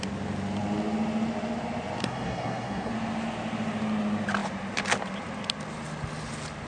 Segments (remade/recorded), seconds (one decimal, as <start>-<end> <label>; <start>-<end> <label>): 0.0-2.0 recorded; 2.0-2.9 remade; 2.9-6.7 recorded